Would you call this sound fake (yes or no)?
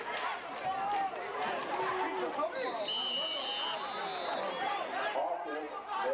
no